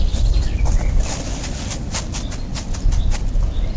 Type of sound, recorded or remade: recorded